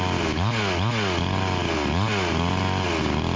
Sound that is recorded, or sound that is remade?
recorded